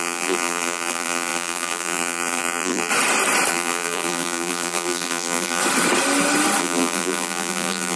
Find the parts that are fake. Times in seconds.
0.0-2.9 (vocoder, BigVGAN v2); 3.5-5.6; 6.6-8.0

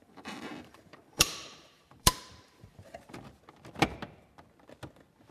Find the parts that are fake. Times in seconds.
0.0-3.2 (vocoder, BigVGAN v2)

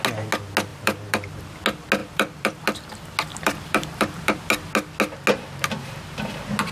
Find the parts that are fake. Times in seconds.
0.7-1.4 (vocoder, BigVGAN v2); 2.0-2.6; 3.3-4.4

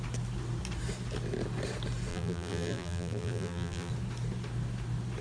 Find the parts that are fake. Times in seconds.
2.1-3.9 (vocoder, BigVGAN v2)

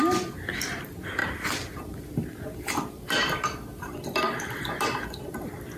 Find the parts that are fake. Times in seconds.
1.2-4.7 (vocoder, BigVGAN v2)